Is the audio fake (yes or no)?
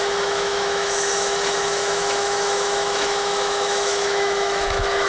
yes